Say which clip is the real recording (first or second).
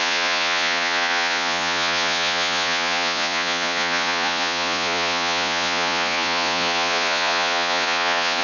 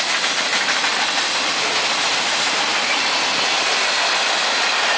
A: second